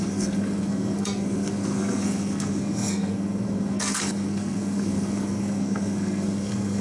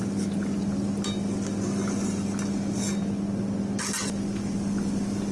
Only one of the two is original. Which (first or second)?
second